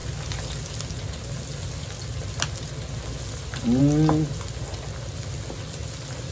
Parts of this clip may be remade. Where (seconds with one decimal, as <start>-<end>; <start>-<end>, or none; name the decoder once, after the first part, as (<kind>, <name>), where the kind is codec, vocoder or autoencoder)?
none

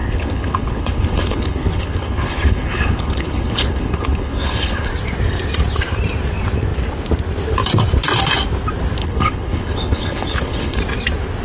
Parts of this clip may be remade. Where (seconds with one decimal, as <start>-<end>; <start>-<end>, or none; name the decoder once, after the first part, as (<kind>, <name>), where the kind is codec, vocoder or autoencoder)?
0.0-4.9 (codec, HILCodec); 9.0-10.8

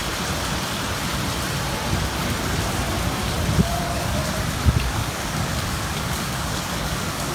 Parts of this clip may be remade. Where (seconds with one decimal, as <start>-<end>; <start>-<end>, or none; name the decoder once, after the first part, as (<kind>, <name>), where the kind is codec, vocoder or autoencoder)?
3.6-4.2 (codec, DAC); 4.8-7.3